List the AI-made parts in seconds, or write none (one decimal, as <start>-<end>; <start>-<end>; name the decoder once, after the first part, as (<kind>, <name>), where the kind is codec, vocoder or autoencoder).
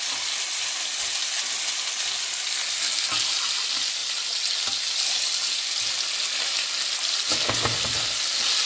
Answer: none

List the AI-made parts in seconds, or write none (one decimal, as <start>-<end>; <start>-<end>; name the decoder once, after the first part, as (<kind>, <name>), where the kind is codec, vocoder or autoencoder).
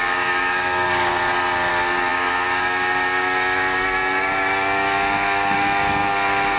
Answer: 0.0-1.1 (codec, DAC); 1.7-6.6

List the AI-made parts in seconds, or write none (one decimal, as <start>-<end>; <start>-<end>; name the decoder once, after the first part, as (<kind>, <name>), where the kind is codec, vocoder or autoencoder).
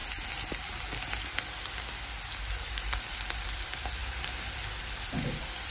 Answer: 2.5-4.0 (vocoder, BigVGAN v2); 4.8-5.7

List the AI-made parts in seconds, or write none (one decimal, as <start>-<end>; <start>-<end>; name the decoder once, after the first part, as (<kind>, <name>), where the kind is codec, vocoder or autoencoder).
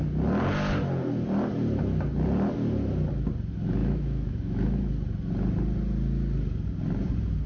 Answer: 3.8-4.9 (autoencoder, DAC-VAE)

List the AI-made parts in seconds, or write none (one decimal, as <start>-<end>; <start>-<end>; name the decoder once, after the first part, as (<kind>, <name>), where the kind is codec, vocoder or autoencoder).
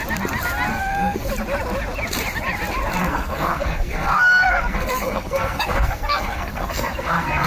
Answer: 0.7-1.3 (codec, SNAC); 3.0-7.5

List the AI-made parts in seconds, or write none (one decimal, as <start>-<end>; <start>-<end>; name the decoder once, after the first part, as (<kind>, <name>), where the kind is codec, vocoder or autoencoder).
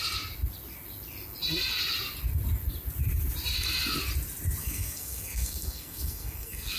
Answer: 4.6-6.8 (codec, SNAC)